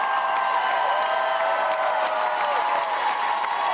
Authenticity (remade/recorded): recorded